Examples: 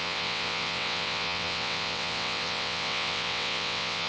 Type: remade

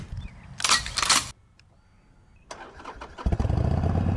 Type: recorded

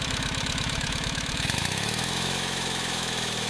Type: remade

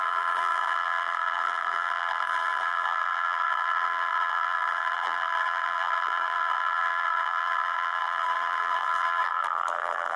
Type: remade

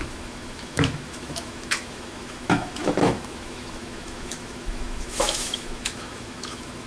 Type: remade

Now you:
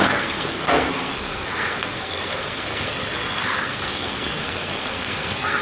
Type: remade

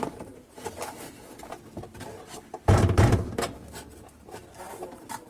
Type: recorded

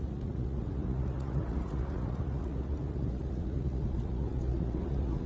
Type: remade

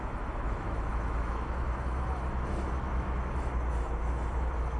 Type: remade